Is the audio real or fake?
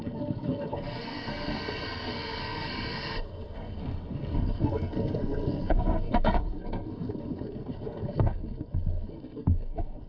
fake